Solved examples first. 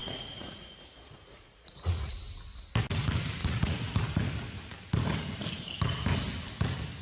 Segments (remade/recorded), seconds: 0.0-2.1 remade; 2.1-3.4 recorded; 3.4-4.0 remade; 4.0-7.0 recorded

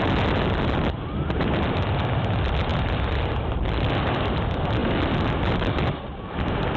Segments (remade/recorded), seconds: 0.0-6.8 recorded

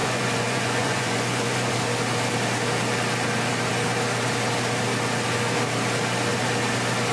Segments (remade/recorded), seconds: 0.0-1.7 remade; 1.7-7.1 recorded

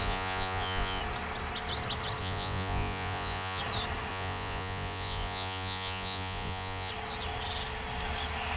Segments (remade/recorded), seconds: 0.0-1.0 remade; 1.0-2.2 recorded; 2.2-3.6 remade; 3.6-4.1 recorded; 4.1-6.9 remade; 6.9-8.6 recorded

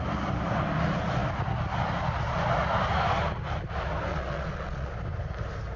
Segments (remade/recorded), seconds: 0.0-4.1 recorded; 4.1-4.9 remade; 4.9-5.8 recorded

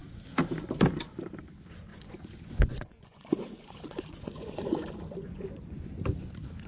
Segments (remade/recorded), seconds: 0.0-1.9 recorded; 1.9-5.9 remade; 5.9-6.7 recorded

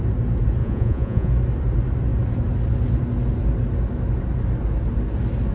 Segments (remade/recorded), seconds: 0.0-0.6 recorded; 0.6-1.3 remade; 1.3-5.5 recorded

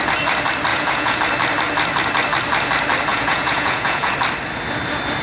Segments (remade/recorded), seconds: 0.0-0.7 recorded; 0.7-1.2 remade; 1.2-3.1 recorded; 3.1-4.1 remade; 4.1-5.2 recorded